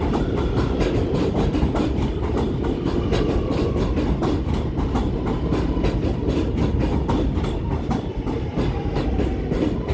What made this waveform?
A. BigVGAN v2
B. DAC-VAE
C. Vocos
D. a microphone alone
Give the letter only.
D